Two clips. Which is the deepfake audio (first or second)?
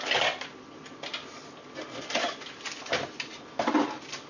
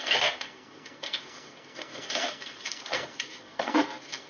second